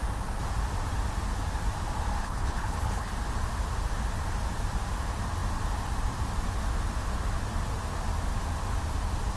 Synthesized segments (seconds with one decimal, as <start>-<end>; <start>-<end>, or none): 2.2-3.1